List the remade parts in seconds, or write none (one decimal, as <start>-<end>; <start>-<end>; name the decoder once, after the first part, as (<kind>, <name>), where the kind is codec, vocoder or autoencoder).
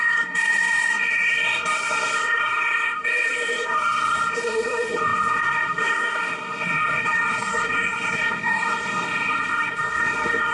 0.0-10.5 (codec, SNAC)